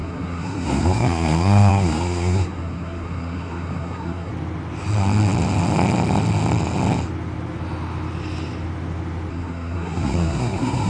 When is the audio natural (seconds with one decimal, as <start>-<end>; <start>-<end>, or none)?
4.3-9.3